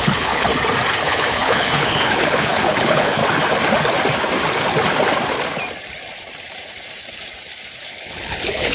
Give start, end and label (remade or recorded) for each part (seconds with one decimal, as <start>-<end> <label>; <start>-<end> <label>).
0.0-0.5 remade; 0.5-1.0 recorded; 1.0-3.2 remade; 3.2-7.9 recorded; 7.9-8.7 remade